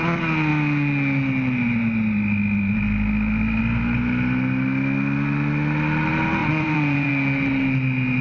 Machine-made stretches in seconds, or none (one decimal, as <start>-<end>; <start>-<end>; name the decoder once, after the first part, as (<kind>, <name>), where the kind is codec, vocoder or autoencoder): 6.4-7.1 (vocoder, Vocos)